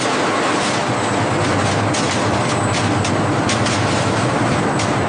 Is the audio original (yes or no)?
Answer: yes